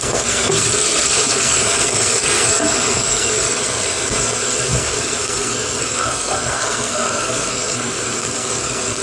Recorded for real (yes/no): no